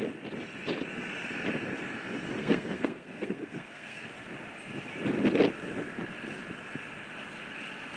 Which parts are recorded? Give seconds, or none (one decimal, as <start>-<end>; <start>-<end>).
0.0-2.4; 4.1-8.0